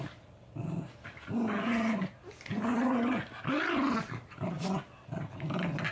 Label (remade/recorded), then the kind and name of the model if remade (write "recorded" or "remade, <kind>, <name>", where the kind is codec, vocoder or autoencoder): recorded